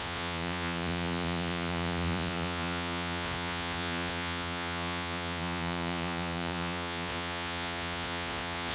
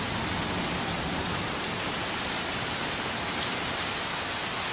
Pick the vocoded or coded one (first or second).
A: first